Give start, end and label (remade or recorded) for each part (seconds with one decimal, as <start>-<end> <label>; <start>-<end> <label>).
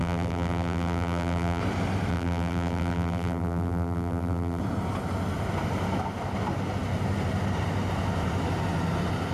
0.0-1.6 remade; 1.6-2.1 recorded; 2.1-4.6 remade; 4.6-9.3 recorded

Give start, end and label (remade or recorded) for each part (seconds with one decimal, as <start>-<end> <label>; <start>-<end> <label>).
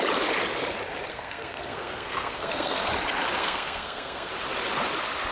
0.0-1.1 recorded; 1.1-2.9 remade; 2.9-3.4 recorded; 3.4-4.3 remade; 4.3-5.3 recorded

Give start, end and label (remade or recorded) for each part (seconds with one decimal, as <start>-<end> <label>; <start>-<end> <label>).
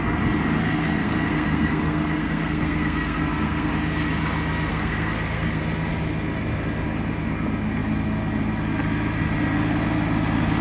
0.0-0.6 recorded; 0.6-3.7 remade; 3.7-4.7 recorded; 4.7-5.6 remade; 5.6-10.6 recorded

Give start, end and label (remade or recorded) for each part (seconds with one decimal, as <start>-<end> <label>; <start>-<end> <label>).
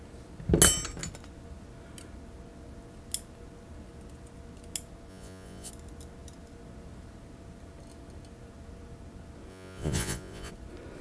0.0-5.1 recorded; 5.1-5.7 remade; 5.7-9.5 recorded; 9.5-10.5 remade; 10.5-11.0 recorded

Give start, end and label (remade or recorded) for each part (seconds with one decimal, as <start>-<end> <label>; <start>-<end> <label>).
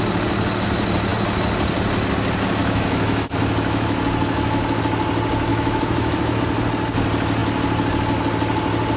0.0-2.6 recorded; 2.6-4.8 remade; 4.8-5.5 recorded; 5.5-6.4 remade; 6.4-9.0 recorded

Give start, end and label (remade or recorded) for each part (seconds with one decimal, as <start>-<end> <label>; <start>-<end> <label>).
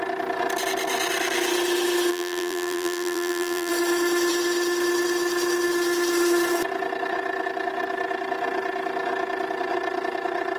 0.0-2.1 recorded; 2.1-3.7 remade; 3.7-10.6 recorded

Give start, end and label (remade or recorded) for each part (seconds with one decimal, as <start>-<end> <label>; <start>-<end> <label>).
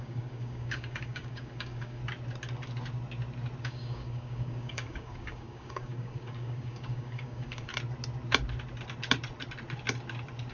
0.0-2.0 remade; 2.0-3.6 recorded; 3.6-7.7 remade; 7.7-10.5 recorded